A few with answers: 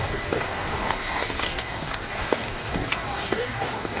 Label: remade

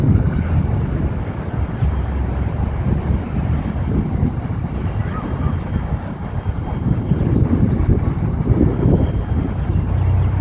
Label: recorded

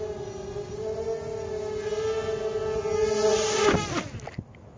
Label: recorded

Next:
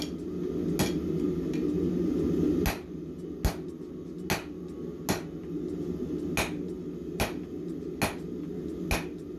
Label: recorded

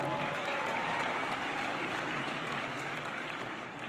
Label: remade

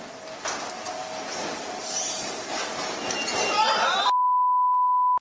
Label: recorded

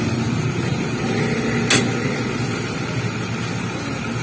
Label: recorded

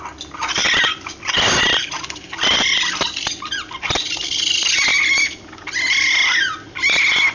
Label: recorded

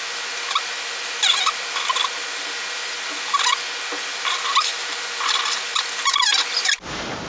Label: recorded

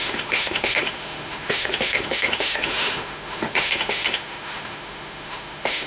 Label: remade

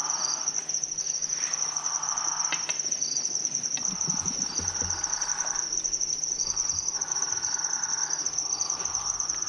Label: recorded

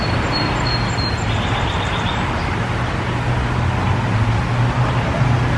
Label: recorded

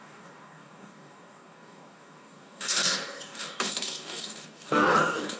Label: remade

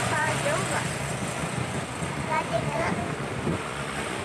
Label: remade